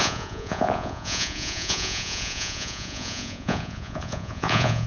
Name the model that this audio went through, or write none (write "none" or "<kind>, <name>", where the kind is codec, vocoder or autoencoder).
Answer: vocoder, Vocos